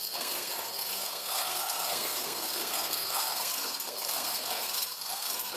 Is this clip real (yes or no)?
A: no